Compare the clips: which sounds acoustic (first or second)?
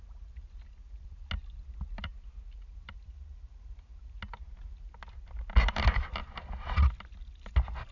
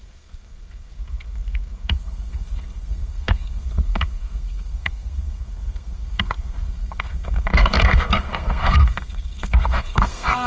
first